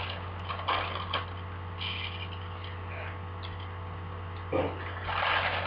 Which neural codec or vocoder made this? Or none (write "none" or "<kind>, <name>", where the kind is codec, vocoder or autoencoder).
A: none